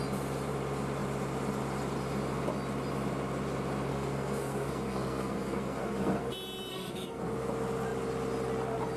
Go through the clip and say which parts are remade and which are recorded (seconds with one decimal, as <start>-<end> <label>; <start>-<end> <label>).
0.0-3.9 recorded; 3.9-6.3 remade; 6.3-6.7 recorded; 6.7-7.3 remade; 7.3-9.0 recorded